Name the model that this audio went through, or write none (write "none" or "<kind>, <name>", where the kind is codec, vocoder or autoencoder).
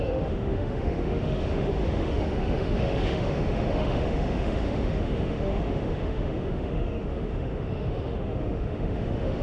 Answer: autoencoder, DAC-VAE